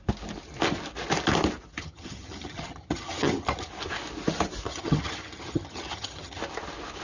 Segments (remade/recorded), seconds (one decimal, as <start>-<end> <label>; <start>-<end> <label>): 0.0-1.8 recorded; 1.8-3.7 remade; 3.7-4.7 recorded; 4.7-6.4 remade; 6.4-7.0 recorded